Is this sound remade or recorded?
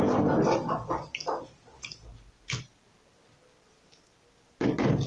recorded